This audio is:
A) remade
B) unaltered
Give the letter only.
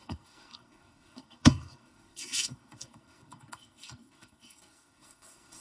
A